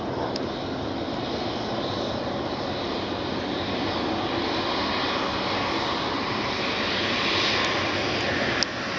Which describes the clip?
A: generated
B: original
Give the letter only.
B